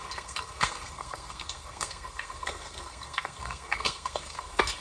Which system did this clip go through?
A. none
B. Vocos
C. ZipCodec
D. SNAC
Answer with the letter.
D